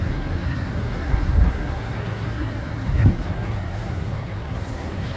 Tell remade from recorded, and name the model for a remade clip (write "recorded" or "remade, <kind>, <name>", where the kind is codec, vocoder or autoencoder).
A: remade, codec, SNAC